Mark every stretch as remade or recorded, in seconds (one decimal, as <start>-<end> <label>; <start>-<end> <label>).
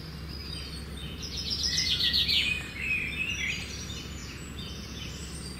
0.0-1.0 recorded; 1.0-2.5 remade; 2.5-4.2 recorded; 4.2-5.1 remade; 5.1-5.6 recorded